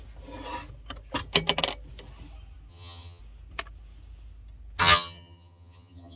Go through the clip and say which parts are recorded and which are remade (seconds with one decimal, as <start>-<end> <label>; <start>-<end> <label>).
0.0-2.7 recorded; 2.7-3.2 remade; 3.2-4.8 recorded; 4.8-6.2 remade